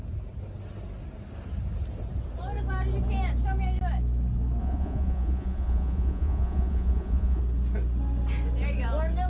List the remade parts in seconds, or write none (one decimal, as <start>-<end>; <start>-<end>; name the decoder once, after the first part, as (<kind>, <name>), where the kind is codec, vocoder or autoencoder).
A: 4.6-7.4 (vocoder, Vocos)